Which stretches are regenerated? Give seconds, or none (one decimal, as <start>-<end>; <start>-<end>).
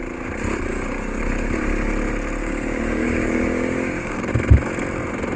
0.7-1.2; 2.4-4.3